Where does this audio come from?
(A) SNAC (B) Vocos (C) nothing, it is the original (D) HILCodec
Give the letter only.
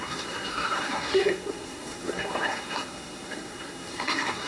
A